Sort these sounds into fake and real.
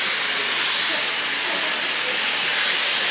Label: real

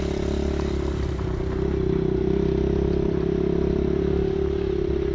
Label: real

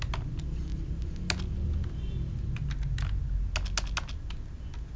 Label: real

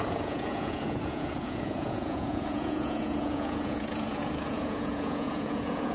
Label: fake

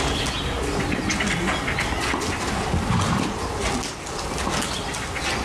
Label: real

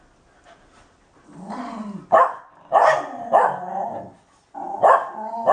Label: real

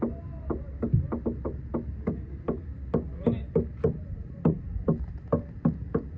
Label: real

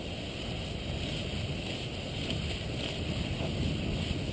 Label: real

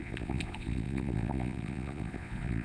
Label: fake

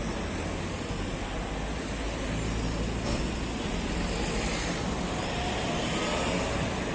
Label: real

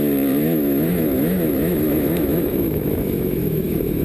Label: fake